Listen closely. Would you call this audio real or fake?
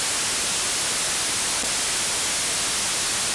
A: real